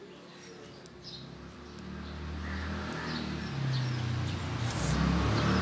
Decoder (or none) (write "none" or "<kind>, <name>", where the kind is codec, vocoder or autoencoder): none